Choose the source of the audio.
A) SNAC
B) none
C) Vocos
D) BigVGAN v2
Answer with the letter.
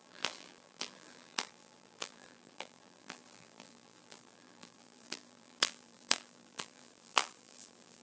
D